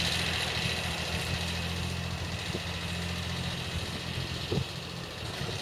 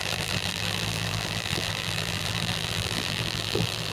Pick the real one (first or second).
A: first